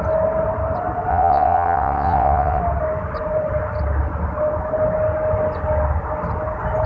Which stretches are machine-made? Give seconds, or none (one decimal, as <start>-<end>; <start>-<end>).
1.1-2.6